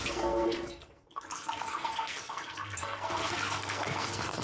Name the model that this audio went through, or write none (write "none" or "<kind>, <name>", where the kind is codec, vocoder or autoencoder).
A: codec, SNAC